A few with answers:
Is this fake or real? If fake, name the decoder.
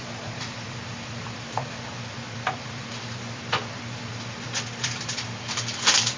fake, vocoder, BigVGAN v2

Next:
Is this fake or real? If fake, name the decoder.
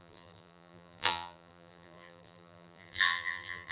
fake, vocoder, BigVGAN v2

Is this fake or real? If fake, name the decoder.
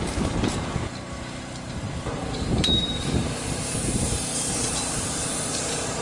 fake, vocoder, BigVGAN v2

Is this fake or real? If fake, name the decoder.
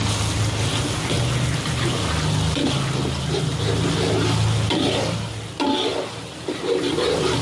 real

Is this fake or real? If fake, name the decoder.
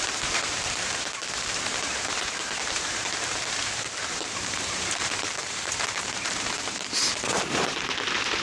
fake, vocoder, BigVGAN v2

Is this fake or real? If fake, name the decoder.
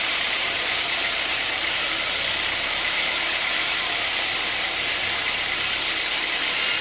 fake, vocoder, BigVGAN v2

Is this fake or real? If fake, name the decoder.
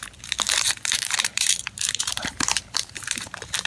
fake, vocoder, BigVGAN v2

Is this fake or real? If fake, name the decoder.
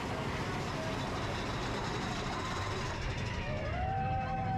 real